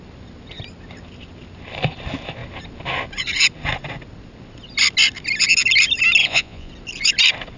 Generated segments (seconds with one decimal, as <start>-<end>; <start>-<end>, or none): 6.2-6.7